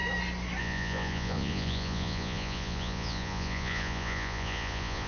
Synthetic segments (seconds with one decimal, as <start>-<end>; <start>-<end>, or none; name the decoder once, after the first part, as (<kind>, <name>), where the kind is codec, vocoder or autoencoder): 0.6-5.1 (vocoder, Vocos)